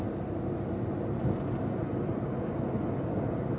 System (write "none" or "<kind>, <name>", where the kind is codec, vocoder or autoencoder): none